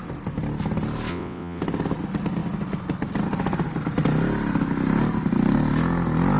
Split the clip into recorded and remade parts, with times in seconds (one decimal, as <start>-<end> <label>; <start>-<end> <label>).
0.0-1.1 recorded; 1.1-1.6 remade; 1.6-6.4 recorded